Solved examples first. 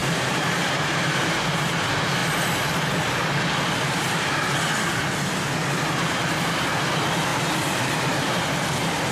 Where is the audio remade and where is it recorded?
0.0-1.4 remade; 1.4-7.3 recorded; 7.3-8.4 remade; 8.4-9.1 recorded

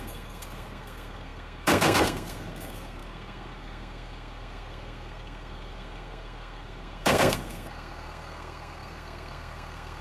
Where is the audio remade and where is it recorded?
0.0-10.0 remade

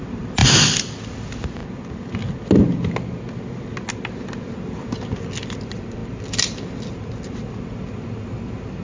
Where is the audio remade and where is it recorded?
0.0-0.4 remade; 0.4-1.1 recorded; 1.1-1.6 remade; 1.6-5.3 recorded; 5.3-8.8 remade

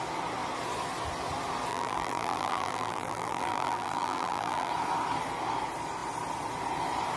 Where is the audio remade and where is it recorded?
0.0-1.7 recorded; 1.7-4.7 remade; 4.7-7.2 recorded

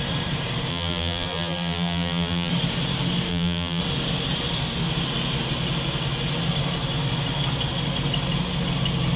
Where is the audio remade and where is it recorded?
0.0-0.7 recorded; 0.7-2.5 remade; 2.5-3.3 recorded; 3.3-3.8 remade; 3.8-9.2 recorded

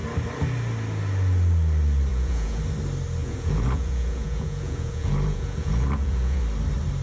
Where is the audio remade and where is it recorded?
0.0-2.1 recorded; 2.1-2.6 remade; 2.6-3.2 recorded; 3.2-6.4 remade; 6.4-7.0 recorded